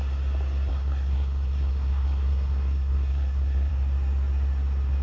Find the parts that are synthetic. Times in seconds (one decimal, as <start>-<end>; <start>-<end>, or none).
0.7-3.7